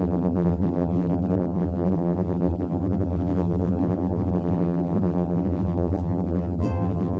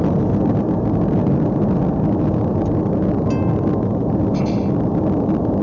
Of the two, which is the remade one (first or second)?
first